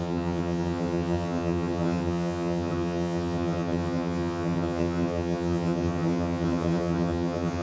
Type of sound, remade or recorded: remade